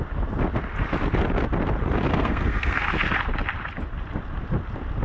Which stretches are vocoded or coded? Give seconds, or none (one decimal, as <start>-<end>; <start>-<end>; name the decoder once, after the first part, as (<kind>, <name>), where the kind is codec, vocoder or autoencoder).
2.1-2.9 (codec, SNAC)